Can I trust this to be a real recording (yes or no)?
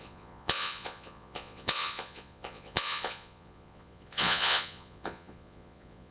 no